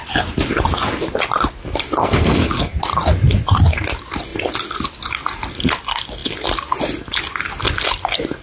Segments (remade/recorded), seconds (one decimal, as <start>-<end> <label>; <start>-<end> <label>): 0.0-2.0 recorded; 2.0-2.8 remade; 2.8-8.4 recorded